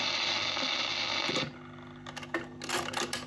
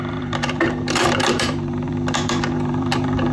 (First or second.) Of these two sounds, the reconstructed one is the second